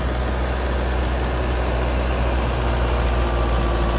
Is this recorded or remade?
recorded